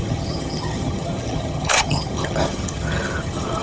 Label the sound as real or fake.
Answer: fake